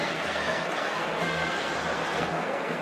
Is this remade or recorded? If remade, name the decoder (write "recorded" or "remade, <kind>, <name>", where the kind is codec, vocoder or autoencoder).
remade, codec, SNAC